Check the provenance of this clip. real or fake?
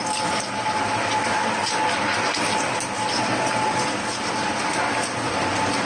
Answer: real